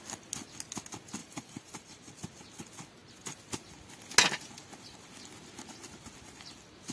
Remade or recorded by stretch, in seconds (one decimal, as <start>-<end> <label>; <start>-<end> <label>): 0.0-1.2 recorded; 1.2-2.1 remade; 2.1-6.9 recorded